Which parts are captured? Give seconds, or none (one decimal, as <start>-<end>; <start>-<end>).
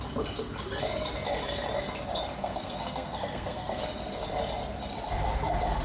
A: 0.0-2.4; 3.8-5.8